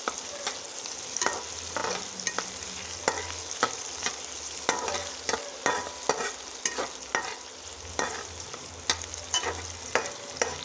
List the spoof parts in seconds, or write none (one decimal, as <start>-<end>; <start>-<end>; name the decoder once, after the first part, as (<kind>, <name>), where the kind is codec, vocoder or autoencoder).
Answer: none